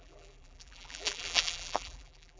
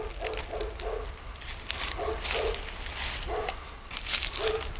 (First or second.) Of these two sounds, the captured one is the second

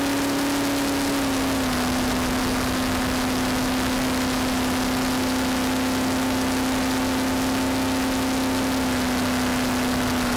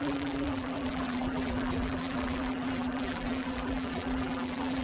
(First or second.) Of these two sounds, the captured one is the first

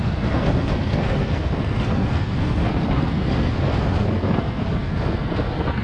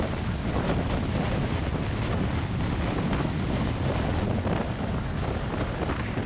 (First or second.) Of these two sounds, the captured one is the second